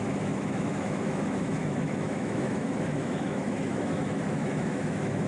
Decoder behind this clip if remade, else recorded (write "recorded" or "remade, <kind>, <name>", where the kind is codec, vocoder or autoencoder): remade, autoencoder, DAC-VAE